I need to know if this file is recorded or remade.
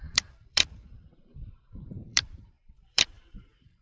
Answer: remade